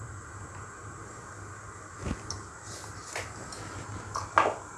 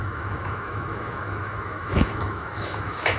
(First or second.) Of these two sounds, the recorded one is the first